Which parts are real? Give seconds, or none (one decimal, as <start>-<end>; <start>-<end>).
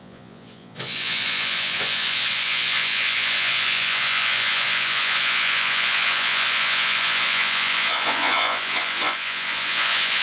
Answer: none